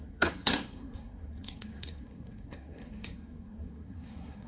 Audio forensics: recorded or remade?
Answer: remade